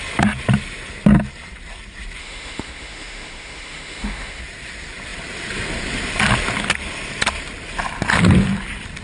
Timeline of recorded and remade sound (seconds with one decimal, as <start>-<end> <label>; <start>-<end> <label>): 0.0-2.2 recorded; 2.2-4.4 remade; 4.4-9.0 recorded